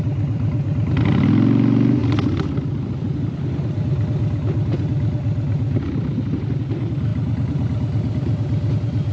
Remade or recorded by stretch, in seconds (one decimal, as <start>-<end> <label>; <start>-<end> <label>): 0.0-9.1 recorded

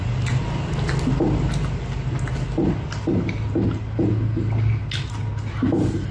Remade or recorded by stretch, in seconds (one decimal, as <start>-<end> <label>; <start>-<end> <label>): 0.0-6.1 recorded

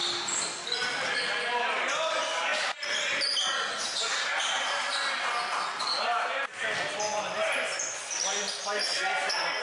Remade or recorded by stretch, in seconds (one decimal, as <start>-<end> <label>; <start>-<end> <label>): 0.0-9.6 recorded

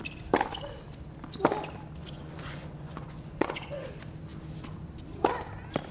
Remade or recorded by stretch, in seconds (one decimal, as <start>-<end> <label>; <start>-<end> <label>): 0.0-2.0 recorded; 2.0-3.9 remade; 3.9-5.9 recorded

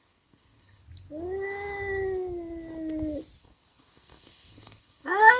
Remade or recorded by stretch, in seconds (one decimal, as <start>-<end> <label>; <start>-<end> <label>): 0.0-0.8 remade; 0.8-3.4 recorded; 3.4-5.4 remade

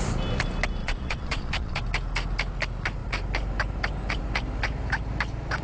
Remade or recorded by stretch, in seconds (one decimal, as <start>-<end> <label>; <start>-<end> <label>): 0.0-0.8 recorded; 0.8-1.8 remade; 1.8-5.6 recorded